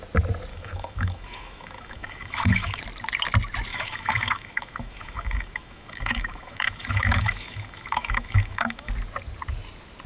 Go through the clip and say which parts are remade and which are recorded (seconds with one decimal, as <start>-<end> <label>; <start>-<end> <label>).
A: 0.0-0.5 recorded; 0.5-2.8 remade; 2.8-3.7 recorded; 3.7-8.9 remade; 8.9-10.1 recorded